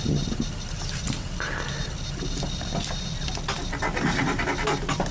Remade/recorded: recorded